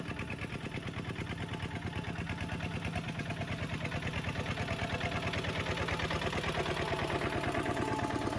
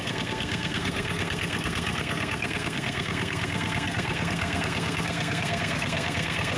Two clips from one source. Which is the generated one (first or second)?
second